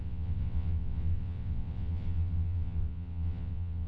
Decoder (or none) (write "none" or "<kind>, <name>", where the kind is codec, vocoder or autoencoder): vocoder, WaveNeXt